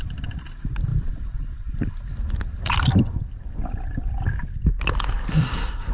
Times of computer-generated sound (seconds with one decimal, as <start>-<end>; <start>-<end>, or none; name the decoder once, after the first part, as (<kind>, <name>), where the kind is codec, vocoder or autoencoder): 5.3-5.9 (codec, SNAC)